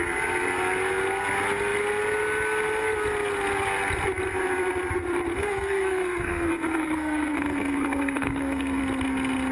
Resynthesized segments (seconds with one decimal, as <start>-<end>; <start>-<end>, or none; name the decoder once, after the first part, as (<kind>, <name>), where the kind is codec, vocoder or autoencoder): 5.4-8.8 (codec, SNAC)